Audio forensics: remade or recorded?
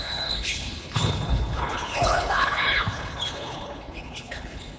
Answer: remade